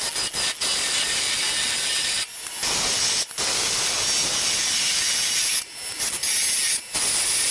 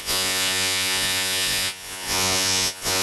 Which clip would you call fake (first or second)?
second